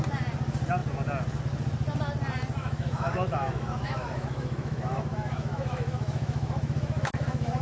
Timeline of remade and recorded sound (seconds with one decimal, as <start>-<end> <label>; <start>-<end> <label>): 0.0-2.6 recorded; 2.6-7.6 remade